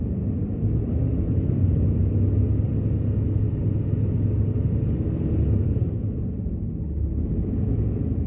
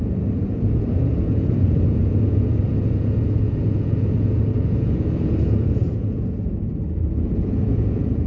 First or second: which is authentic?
first